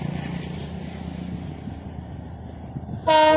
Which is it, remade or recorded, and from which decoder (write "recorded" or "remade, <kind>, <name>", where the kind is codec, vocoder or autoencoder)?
recorded